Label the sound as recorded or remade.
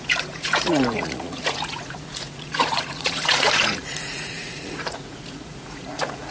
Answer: remade